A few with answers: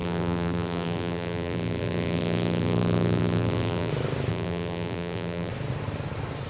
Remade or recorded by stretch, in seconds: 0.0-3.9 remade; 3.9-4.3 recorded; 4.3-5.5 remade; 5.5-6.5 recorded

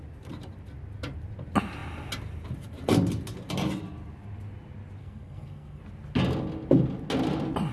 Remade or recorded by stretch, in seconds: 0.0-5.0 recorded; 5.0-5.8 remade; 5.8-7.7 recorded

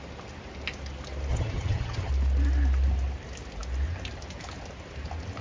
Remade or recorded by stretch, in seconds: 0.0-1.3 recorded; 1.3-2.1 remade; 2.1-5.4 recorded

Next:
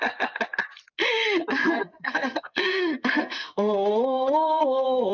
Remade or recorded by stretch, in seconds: 0.0-1.6 recorded; 1.6-5.1 remade

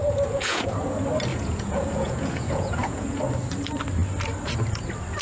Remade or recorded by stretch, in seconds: 0.0-0.7 remade; 0.7-1.3 recorded; 1.3-3.2 remade; 3.2-5.2 recorded